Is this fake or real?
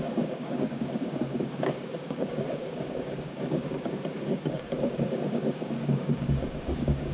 fake